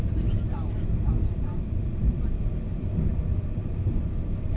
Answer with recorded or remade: remade